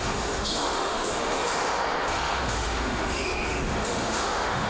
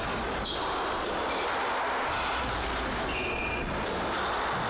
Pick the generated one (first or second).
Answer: first